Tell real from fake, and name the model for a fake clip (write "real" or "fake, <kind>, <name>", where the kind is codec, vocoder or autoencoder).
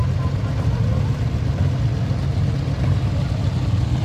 real